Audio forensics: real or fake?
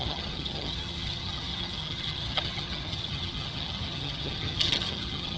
fake